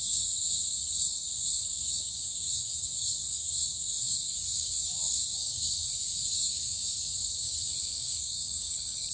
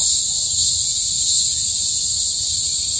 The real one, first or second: second